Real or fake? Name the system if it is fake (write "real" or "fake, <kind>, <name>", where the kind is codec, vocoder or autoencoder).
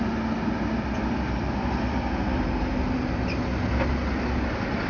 real